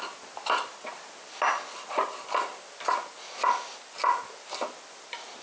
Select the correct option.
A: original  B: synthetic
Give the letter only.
A